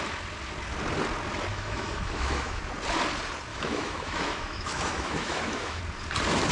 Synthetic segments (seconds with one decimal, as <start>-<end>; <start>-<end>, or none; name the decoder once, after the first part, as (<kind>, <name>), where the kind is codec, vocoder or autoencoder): 1.5-2.6 (autoencoder, DAC-VAE); 3.5-5.8